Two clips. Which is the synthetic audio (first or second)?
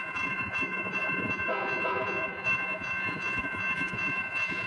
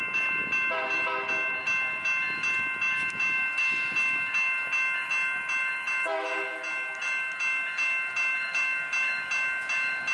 first